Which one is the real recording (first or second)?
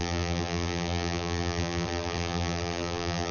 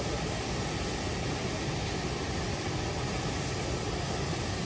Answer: second